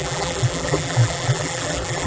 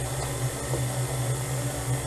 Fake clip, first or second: first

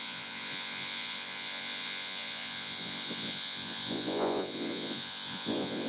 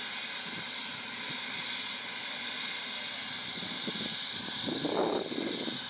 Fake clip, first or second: first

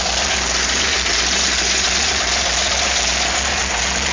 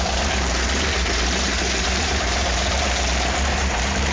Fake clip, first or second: second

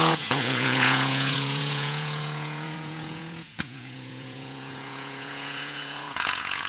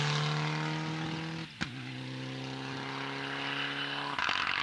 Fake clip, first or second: first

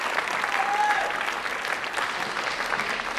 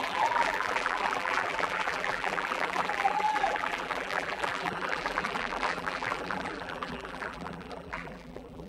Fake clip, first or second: second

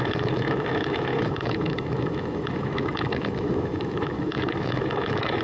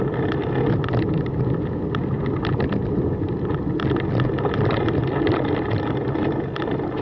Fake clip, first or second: first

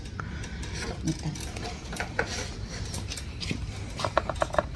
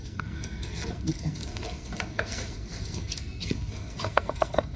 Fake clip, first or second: second